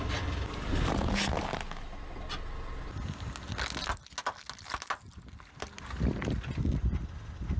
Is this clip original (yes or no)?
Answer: yes